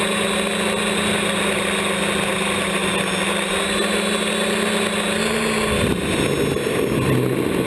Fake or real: real